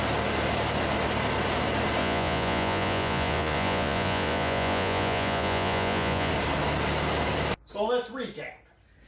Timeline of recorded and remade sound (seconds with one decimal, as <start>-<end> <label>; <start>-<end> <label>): 0.0-2.0 recorded; 2.0-6.3 remade; 6.3-9.1 recorded